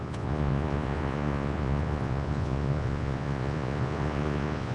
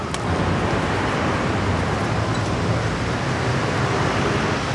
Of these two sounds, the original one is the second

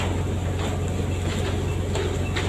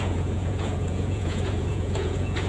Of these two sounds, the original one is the first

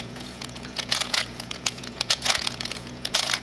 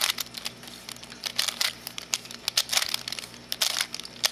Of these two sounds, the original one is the second